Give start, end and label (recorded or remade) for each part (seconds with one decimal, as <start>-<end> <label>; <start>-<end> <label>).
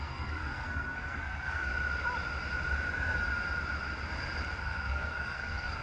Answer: 0.0-1.7 remade; 1.7-4.6 recorded; 4.6-5.8 remade